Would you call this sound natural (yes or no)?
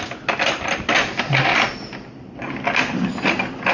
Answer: yes